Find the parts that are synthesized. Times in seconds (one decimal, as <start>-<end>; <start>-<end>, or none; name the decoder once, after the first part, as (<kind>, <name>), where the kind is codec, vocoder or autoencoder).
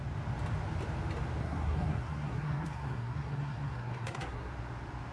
1.4-4.5 (codec, SNAC)